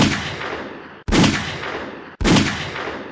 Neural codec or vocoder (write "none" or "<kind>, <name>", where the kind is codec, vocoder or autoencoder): none